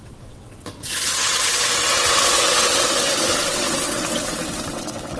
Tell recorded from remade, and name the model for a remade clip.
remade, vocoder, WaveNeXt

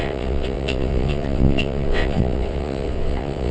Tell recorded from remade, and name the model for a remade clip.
remade, vocoder, WaveNeXt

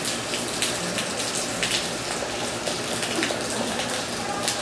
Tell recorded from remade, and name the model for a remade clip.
recorded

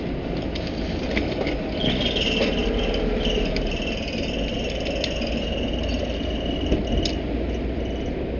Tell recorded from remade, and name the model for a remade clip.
recorded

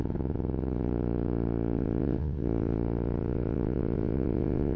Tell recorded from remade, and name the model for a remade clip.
remade, vocoder, WaveNeXt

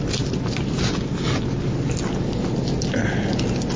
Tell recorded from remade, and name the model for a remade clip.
recorded